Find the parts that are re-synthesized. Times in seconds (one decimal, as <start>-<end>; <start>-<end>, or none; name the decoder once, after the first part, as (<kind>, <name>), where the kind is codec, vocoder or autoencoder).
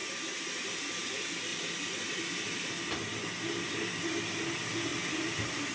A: 1.5-2.7 (vocoder, BigVGAN v2); 4.9-5.7